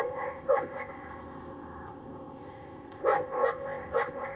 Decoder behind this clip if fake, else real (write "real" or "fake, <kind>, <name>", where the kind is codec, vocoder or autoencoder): fake, codec, ZipCodec